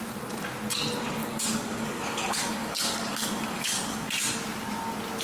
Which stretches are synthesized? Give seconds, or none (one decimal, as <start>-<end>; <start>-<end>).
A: 1.2-4.1